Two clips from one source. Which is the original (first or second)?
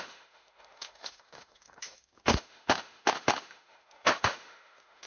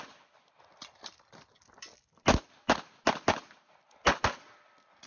second